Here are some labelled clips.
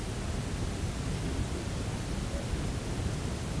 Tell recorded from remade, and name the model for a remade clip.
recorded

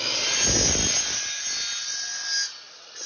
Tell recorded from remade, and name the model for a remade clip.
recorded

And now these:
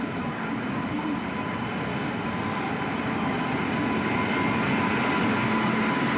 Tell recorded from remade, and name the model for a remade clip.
recorded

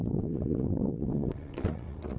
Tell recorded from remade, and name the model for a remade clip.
remade, vocoder, WaveNeXt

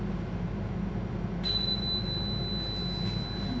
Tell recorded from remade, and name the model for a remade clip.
recorded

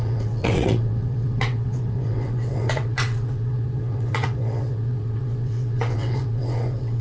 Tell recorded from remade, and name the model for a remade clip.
remade, vocoder, WaveNeXt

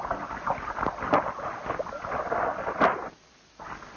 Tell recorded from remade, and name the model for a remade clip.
recorded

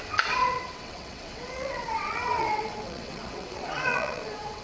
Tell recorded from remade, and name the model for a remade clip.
remade, vocoder, WaveNeXt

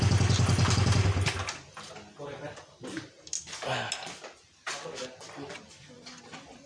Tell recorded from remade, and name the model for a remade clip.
recorded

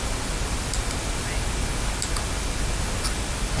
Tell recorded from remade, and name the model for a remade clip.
recorded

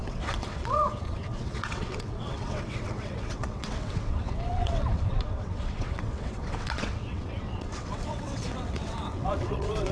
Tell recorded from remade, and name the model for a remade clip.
remade, vocoder, WaveNeXt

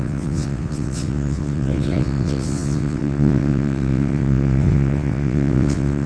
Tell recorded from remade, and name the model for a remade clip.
remade, vocoder, WaveNeXt